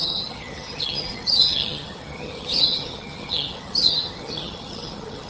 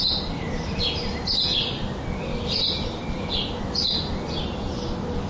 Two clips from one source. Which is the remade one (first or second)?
first